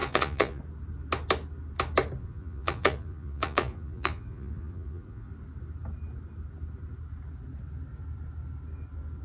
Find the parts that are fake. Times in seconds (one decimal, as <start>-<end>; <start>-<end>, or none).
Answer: 0.0-0.6; 2.2-5.3